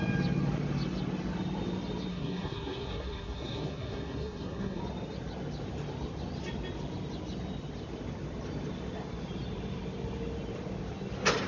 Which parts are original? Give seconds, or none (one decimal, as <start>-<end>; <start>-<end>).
0.0-2.1; 4.8-11.5